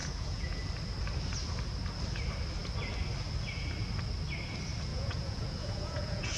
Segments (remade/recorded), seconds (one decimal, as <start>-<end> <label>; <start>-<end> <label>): 0.0-0.6 remade; 0.6-4.9 recorded; 4.9-6.4 remade